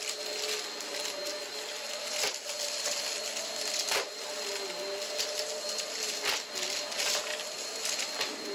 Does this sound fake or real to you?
real